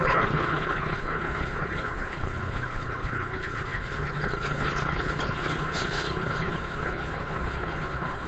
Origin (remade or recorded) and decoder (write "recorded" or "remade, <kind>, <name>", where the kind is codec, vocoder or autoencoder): remade, codec, HILCodec